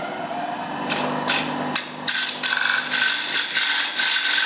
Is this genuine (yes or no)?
yes